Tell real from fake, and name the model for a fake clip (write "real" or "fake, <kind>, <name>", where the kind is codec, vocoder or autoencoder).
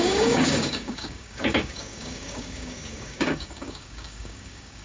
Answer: fake, codec, DAC